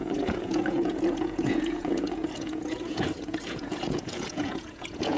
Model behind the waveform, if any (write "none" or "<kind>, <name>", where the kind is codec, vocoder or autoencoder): vocoder, Vocos